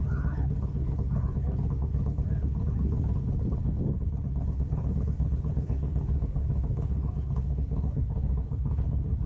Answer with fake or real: fake